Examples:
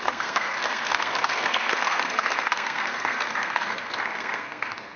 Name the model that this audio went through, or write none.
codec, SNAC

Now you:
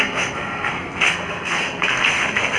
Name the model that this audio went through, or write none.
codec, SNAC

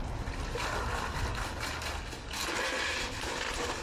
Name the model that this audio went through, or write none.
none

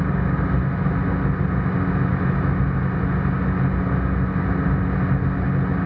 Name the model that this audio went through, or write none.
none